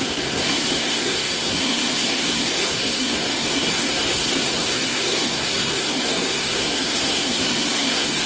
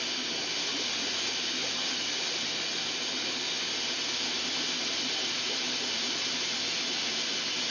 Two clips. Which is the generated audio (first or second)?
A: first